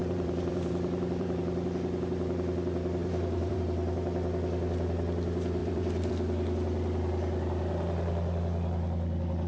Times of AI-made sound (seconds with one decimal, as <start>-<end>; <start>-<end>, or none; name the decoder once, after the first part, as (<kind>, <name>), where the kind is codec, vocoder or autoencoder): 0.0-1.4 (vocoder, BigVGAN v2); 3.0-3.6; 5.6-6.1

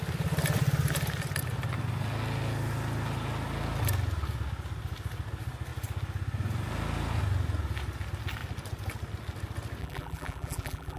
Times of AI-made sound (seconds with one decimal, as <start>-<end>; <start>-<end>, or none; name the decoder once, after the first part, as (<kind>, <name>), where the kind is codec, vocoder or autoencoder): 9.8-11.0 (vocoder, BigVGAN v2)

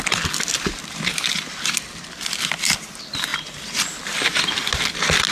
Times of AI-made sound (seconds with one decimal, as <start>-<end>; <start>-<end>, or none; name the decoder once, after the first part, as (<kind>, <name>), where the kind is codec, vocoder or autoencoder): none

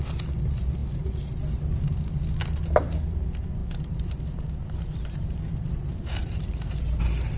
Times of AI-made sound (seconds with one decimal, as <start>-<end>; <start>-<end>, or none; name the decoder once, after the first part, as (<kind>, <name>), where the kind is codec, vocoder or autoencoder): 3.6-7.0 (vocoder, BigVGAN v2)